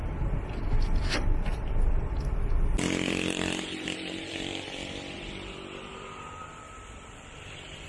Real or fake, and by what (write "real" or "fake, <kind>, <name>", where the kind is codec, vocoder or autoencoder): fake, vocoder, BigVGAN v2